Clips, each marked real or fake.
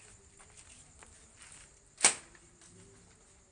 real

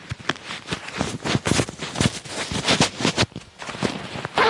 real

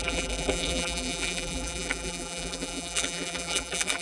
fake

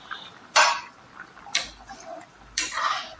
fake